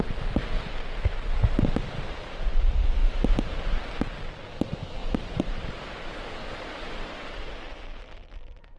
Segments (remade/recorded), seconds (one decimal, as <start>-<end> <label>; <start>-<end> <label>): 0.0-5.0 recorded; 5.0-7.5 remade; 7.5-8.8 recorded